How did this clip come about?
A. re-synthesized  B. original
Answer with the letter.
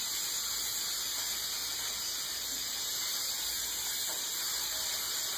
B